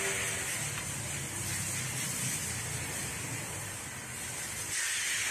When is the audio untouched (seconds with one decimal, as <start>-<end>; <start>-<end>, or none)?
0.0-2.4; 3.1-5.3